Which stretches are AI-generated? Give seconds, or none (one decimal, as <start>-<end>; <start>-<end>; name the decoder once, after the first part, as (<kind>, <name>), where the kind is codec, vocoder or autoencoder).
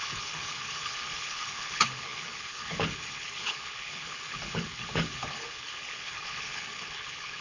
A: 0.0-7.4 (codec, HILCodec)